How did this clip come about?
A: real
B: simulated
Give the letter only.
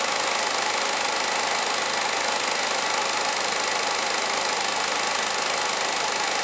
A